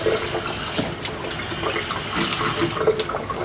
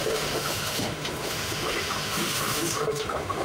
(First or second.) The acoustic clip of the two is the first